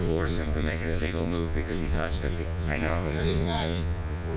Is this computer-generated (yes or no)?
yes